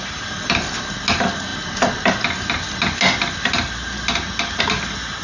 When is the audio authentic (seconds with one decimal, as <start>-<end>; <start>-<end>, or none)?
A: 0.0-5.2